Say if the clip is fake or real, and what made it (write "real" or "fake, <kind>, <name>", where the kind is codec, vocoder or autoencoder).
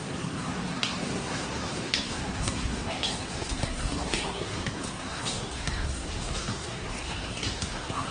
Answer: fake, codec, SNAC